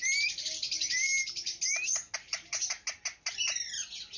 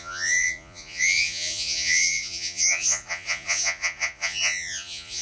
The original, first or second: first